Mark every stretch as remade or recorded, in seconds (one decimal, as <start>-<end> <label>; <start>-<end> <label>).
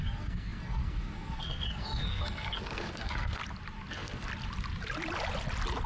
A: 0.0-3.4 remade; 3.4-3.9 recorded; 3.9-4.3 remade; 4.3-5.9 recorded